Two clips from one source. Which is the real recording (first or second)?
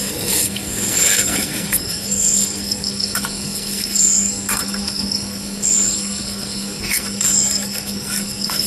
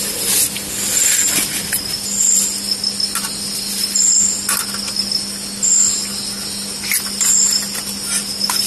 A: second